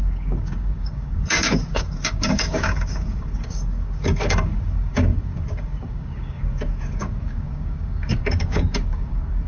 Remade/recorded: remade